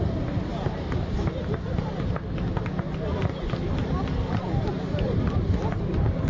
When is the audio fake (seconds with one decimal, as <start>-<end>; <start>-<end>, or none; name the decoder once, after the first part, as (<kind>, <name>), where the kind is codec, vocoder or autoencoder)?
0.0-0.5 (vocoder, BigVGAN v2); 4.3-6.3